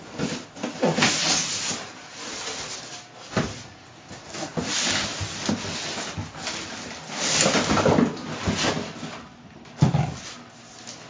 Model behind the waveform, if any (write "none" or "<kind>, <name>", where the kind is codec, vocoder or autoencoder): none